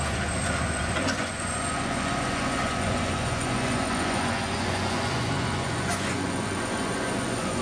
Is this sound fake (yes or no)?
yes